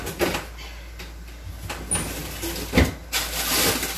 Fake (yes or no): no